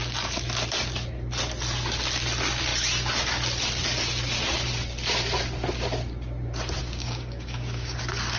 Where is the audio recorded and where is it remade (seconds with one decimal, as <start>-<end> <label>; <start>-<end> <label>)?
0.0-6.8 recorded; 6.8-8.0 remade; 8.0-8.4 recorded